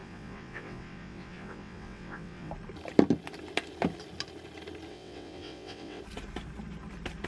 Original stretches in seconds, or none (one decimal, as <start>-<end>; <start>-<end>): 2.5-4.9; 6.0-7.3